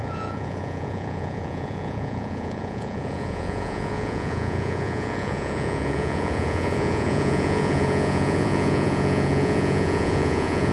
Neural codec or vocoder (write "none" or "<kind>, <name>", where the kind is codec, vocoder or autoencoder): vocoder, Vocos